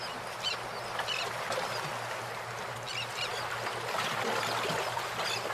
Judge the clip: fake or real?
real